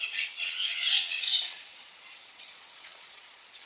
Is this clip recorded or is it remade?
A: remade